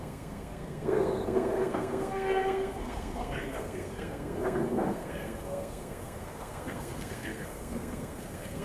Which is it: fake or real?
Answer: fake